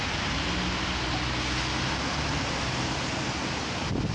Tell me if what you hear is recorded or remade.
recorded